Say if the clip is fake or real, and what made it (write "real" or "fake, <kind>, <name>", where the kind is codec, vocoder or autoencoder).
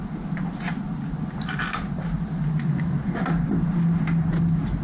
real